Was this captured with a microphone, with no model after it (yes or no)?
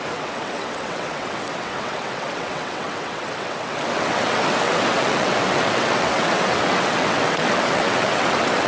no